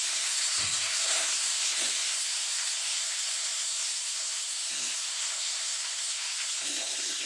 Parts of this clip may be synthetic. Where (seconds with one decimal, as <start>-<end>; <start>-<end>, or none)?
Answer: 0.0-7.2